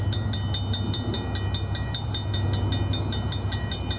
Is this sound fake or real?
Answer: real